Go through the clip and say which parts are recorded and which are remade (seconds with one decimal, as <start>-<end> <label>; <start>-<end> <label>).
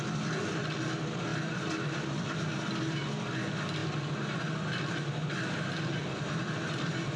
0.0-1.3 recorded; 1.3-2.8 remade; 2.8-6.0 recorded; 6.0-7.2 remade